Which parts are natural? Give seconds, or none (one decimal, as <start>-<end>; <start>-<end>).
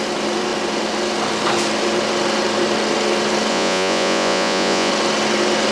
0.0-3.5; 4.9-5.7